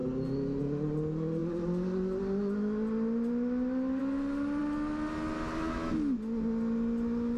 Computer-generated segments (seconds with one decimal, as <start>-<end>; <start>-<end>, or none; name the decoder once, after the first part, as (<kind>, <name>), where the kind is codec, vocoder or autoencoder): none